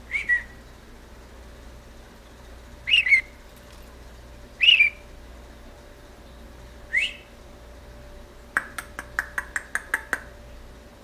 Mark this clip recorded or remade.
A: recorded